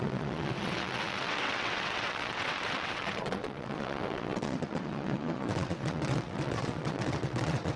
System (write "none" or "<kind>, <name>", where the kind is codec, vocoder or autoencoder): vocoder, WaveNeXt